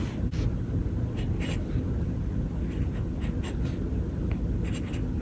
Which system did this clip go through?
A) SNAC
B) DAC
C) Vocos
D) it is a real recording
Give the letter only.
D